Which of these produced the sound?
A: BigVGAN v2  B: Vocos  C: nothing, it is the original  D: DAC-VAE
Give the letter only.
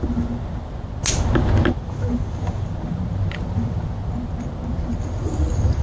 C